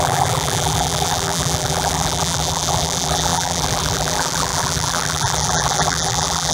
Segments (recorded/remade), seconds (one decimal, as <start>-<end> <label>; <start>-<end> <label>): 0.0-6.5 remade